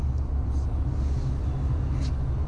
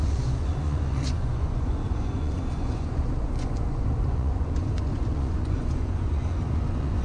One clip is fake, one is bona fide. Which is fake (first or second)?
second